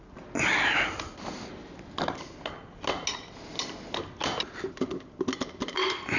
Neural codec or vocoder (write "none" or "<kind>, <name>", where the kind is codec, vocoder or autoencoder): none